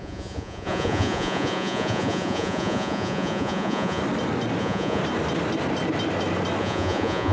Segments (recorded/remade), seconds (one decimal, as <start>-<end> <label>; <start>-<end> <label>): 0.0-4.0 remade; 4.0-4.6 recorded; 4.6-5.0 remade; 5.0-6.6 recorded; 6.6-7.3 remade